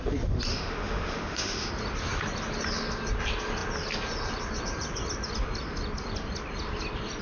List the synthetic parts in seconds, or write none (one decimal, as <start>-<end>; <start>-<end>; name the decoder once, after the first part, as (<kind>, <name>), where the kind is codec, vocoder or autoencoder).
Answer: 0.5-1.7 (autoencoder, DAC-VAE)